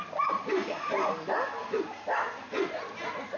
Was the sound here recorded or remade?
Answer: recorded